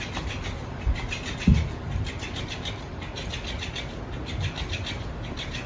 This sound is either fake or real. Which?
real